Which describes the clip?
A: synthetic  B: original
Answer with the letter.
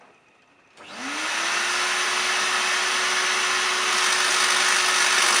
B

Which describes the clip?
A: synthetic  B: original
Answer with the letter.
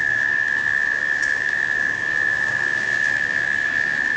A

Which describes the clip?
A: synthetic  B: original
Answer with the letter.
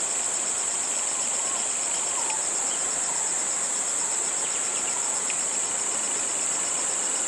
A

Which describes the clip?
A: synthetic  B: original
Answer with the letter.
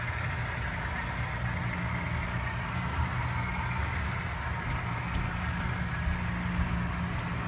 B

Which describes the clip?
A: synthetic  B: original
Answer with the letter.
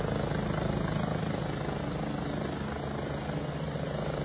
B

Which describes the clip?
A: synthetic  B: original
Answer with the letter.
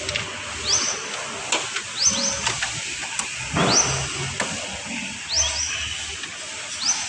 B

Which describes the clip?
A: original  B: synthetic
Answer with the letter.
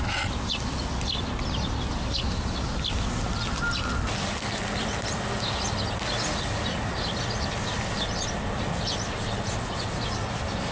A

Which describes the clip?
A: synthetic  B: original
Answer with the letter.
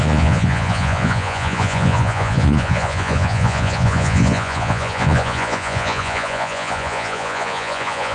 A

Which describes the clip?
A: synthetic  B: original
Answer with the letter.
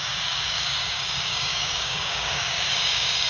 A